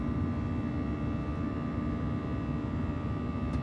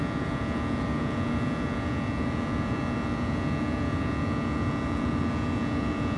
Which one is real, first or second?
first